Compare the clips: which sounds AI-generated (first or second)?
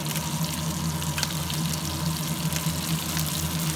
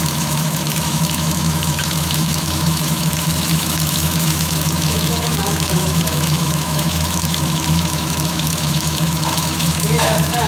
second